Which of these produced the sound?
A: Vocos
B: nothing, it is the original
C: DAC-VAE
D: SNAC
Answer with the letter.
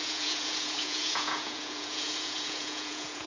A